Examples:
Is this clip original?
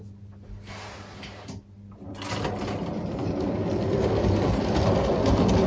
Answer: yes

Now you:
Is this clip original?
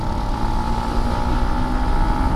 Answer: yes